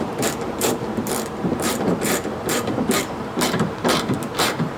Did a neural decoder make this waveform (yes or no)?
yes